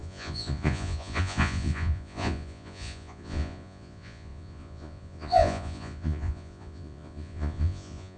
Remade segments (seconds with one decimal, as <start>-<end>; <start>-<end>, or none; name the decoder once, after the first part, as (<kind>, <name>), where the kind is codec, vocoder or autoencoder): 0.0-8.2 (vocoder, Vocos)